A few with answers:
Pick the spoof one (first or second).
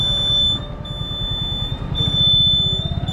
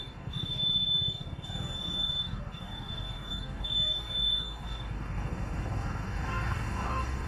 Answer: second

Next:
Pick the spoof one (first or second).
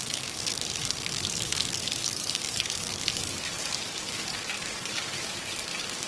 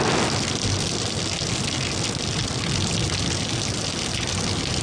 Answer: first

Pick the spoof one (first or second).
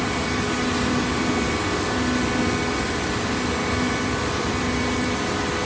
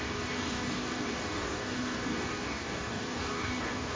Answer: second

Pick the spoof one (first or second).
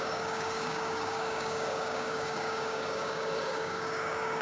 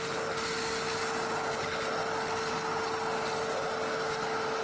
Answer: first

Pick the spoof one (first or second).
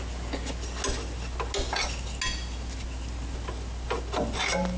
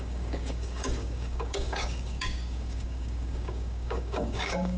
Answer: second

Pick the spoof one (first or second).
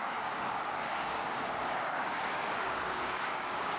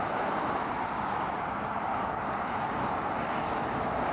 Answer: first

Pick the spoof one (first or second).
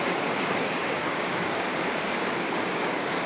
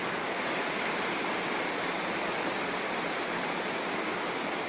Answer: first